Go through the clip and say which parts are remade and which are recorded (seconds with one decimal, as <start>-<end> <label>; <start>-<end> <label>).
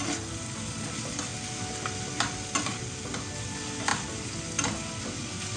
0.0-5.6 recorded